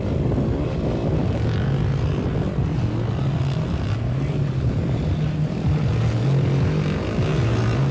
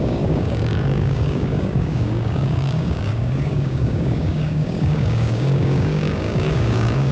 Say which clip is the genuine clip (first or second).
first